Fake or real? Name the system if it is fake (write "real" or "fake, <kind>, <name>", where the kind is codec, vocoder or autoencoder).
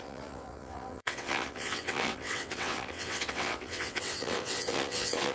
fake, vocoder, WaveNeXt